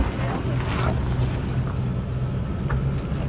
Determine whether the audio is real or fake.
real